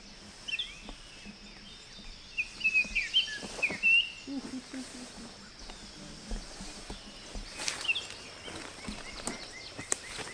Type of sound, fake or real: real